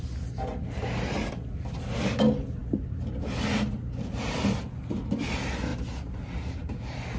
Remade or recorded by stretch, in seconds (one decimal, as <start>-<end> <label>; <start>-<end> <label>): 0.0-7.2 recorded